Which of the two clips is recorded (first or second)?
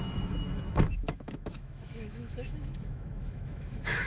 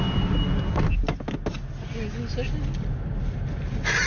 second